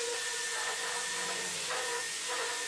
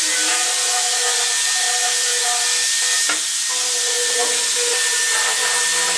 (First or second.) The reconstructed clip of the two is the first